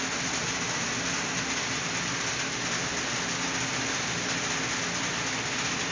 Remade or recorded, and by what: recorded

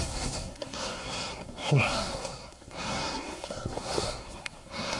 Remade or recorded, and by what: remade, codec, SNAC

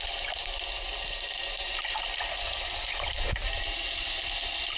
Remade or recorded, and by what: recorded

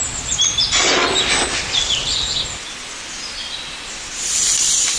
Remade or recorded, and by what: recorded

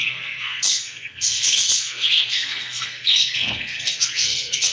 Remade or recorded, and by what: remade, codec, SNAC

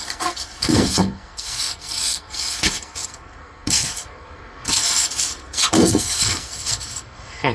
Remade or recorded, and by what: remade, codec, SNAC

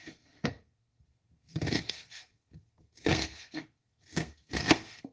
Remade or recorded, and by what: remade, codec, SNAC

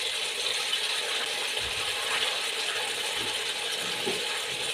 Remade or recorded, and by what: recorded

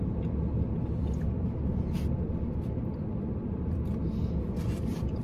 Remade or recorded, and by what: recorded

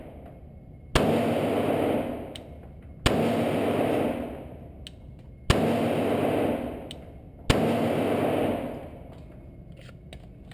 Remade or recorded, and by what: recorded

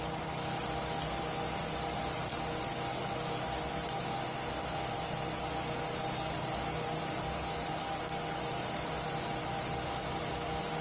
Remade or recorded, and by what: recorded